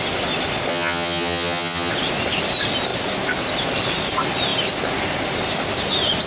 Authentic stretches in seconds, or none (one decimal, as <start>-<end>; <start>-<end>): 0.0-0.7; 1.9-6.3